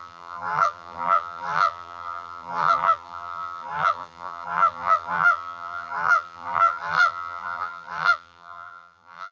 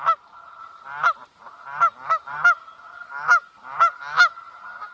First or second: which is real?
second